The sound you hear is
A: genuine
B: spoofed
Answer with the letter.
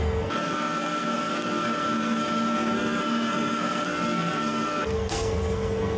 B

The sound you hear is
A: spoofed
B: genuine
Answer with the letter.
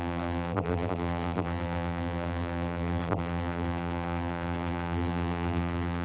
A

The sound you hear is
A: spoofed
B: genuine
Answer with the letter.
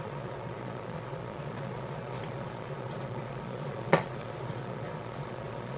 A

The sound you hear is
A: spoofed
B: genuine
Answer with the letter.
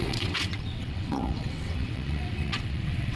A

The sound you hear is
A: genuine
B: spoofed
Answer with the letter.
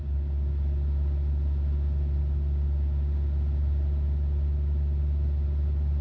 A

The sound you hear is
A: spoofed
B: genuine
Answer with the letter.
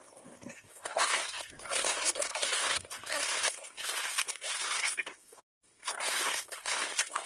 A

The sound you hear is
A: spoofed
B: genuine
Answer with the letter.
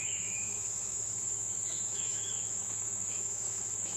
A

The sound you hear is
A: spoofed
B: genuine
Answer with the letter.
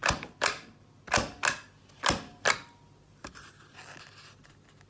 B